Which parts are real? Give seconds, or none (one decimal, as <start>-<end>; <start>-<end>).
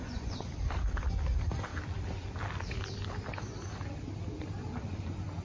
0.5-5.4